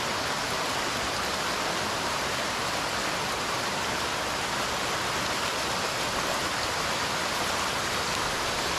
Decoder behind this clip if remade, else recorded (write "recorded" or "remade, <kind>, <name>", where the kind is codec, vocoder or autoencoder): recorded